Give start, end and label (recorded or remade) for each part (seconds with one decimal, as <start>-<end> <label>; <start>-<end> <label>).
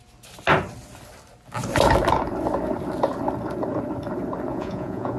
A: 0.0-4.5 recorded; 4.5-5.2 remade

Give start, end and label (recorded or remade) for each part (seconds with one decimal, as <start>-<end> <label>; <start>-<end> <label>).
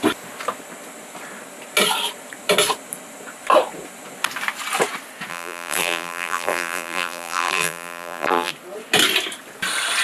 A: 0.0-5.3 recorded; 5.3-8.5 remade; 8.5-10.0 recorded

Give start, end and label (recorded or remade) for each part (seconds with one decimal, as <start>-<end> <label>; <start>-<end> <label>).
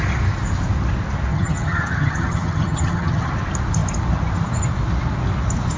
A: 0.0-1.3 recorded; 1.3-3.3 remade; 3.3-5.8 recorded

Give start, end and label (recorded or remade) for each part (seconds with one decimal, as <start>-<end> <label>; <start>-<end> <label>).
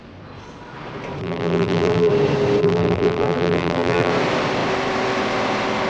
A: 0.0-1.2 recorded; 1.2-2.1 remade; 2.1-2.6 recorded; 2.6-4.1 remade; 4.1-5.9 recorded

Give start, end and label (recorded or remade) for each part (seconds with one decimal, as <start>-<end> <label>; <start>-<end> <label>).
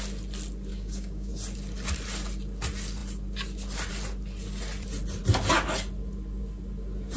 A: 0.0-0.7 recorded; 0.7-1.3 remade; 1.3-7.2 recorded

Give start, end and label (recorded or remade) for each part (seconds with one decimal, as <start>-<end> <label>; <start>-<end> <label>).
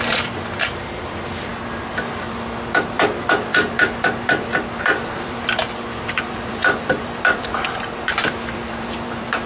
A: 0.0-1.5 remade; 1.5-2.2 recorded; 2.2-9.5 remade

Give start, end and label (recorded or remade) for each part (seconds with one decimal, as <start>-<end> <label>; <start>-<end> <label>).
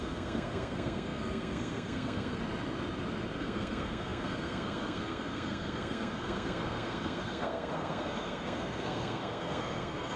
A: 0.0-2.4 remade; 2.4-3.4 recorded; 3.4-10.2 remade